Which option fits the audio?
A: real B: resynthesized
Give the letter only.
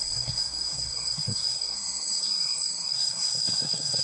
B